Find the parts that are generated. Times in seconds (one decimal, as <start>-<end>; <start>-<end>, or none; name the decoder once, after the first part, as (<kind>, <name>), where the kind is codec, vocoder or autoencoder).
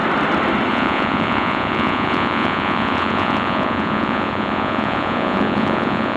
0.7-6.2 (vocoder, Vocos)